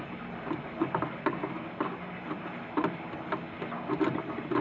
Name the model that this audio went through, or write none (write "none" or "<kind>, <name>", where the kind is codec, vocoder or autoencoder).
none